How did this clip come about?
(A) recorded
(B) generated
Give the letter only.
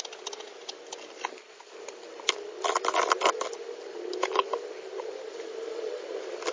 A